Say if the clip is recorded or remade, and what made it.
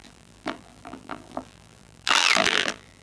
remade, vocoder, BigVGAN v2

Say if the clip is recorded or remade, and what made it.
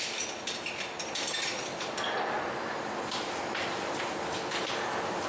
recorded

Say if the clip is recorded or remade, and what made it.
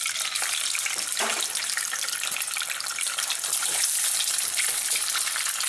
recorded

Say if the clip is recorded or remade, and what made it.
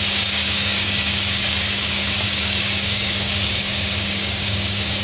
remade, codec, DAC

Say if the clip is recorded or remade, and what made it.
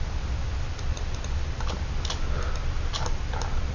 recorded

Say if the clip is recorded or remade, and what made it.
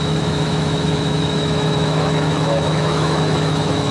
remade, autoencoder, DAC-VAE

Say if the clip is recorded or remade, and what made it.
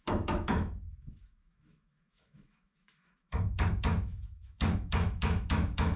remade, autoencoder, DAC-VAE